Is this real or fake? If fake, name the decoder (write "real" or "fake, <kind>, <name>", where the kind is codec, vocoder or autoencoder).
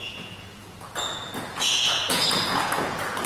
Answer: fake, vocoder, Vocos